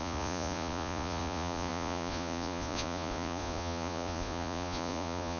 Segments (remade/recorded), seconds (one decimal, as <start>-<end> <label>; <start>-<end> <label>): 0.0-5.4 remade